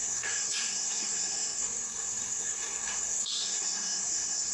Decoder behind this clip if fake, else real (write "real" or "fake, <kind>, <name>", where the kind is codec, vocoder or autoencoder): fake, codec, SNAC